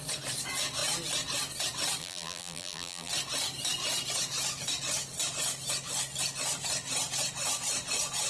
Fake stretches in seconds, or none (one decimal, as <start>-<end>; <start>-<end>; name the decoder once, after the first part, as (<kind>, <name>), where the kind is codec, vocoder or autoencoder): 2.0-3.1 (vocoder, BigVGAN v2)